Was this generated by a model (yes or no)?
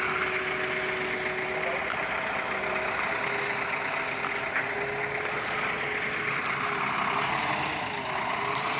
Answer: no